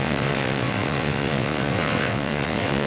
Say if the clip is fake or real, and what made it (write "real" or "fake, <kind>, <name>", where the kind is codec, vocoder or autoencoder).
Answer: fake, vocoder, WaveNeXt